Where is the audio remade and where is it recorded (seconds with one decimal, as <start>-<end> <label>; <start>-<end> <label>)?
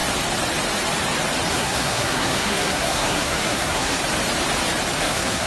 0.0-1.5 recorded; 1.5-4.0 remade; 4.0-5.0 recorded; 5.0-5.5 remade